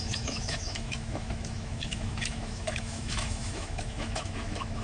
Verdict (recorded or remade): remade